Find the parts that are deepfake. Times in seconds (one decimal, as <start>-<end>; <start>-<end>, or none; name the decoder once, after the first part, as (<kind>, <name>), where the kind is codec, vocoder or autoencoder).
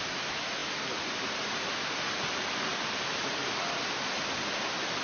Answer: none